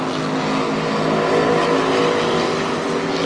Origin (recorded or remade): recorded